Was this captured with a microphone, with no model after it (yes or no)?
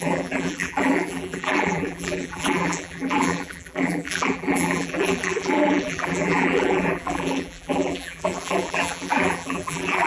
no